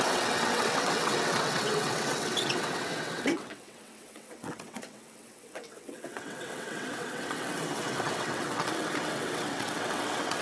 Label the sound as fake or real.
fake